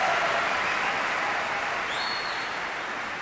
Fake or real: real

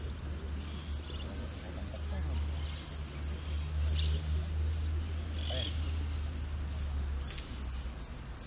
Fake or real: real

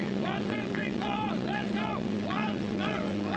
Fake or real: fake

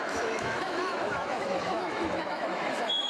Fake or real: fake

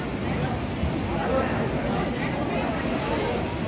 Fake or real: real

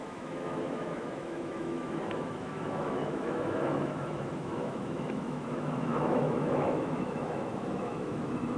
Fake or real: fake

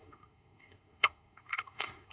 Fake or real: fake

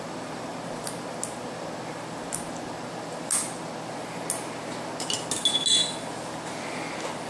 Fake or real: real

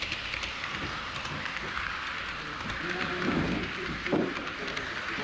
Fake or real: real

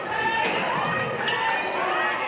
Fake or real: real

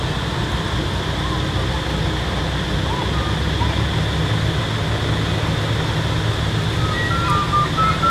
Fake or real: real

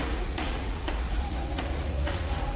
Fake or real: fake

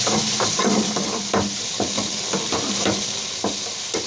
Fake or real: real